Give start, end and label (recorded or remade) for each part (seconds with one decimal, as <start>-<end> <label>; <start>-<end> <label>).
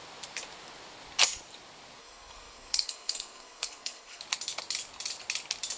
0.0-2.0 recorded; 2.0-4.2 remade; 4.2-5.8 recorded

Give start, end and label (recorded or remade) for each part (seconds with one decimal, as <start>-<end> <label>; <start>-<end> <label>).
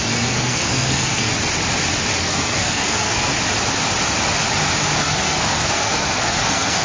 0.0-1.3 remade; 1.3-2.2 recorded; 2.2-3.3 remade; 3.3-5.0 recorded; 5.0-6.8 remade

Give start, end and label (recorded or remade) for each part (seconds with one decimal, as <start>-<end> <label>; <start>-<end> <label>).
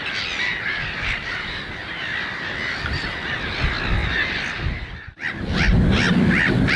0.0-6.8 recorded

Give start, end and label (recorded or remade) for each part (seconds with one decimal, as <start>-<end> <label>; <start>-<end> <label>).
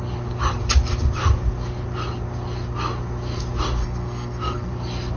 0.0-3.8 recorded; 3.8-4.7 remade; 4.7-5.2 recorded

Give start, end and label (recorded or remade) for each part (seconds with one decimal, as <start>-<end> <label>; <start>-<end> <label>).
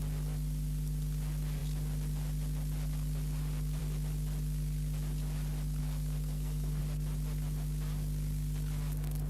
0.0-5.8 recorded; 5.8-6.8 remade; 6.8-9.3 recorded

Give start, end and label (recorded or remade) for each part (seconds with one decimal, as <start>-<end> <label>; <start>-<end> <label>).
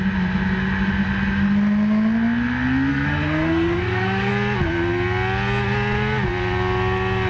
0.0-2.9 recorded; 2.9-4.3 remade; 4.3-7.3 recorded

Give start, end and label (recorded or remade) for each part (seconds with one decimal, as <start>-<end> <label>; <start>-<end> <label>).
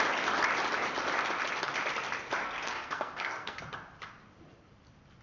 0.0-2.4 recorded; 2.4-3.6 remade; 3.6-5.2 recorded